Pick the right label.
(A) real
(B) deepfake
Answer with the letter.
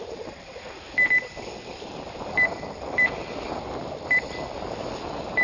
B